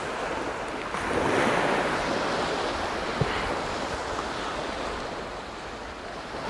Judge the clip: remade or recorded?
recorded